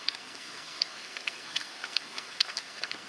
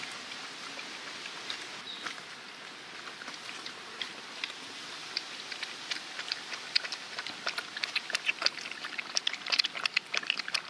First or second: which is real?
second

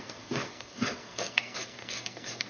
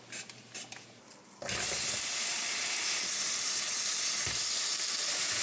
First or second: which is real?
second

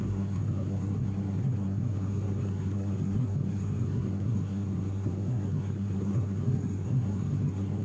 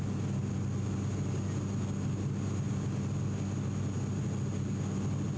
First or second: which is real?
second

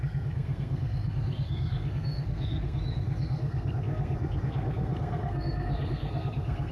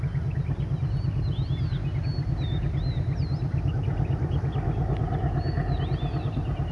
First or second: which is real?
second